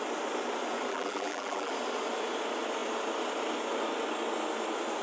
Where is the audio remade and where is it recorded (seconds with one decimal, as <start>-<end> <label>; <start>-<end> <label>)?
0.0-0.9 recorded; 0.9-1.7 remade; 1.7-5.0 recorded